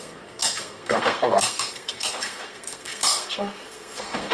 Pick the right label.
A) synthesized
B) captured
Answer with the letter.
A